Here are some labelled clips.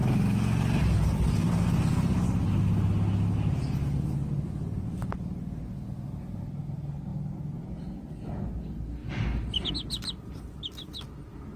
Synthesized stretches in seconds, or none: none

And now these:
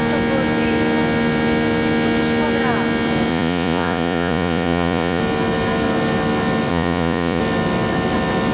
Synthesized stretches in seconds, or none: 3.3-5.2; 6.7-7.4

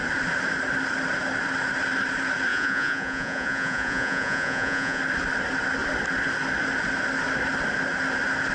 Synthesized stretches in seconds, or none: 2.5-5.0

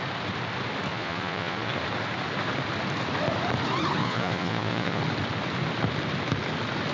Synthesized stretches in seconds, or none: 0.9-1.7; 4.0-5.0

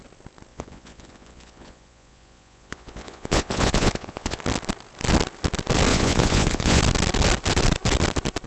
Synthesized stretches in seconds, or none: 0.5-4.4; 5.9-6.8